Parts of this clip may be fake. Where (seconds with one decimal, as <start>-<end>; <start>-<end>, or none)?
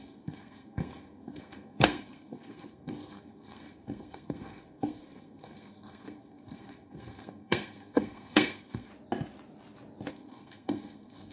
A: 0.0-8.9; 10.1-11.3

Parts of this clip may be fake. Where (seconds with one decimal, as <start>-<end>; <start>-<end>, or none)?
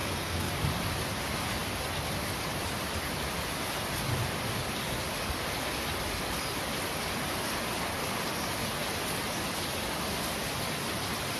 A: 0.0-0.5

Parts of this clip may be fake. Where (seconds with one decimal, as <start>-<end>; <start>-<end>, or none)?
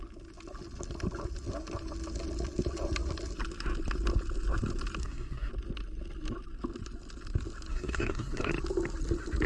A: 5.0-5.5; 7.7-8.5